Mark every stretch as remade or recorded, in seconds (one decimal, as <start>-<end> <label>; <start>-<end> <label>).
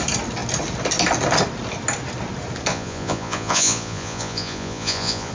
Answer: 0.0-2.7 recorded; 2.7-5.3 remade